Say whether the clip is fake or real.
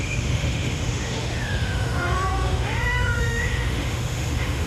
fake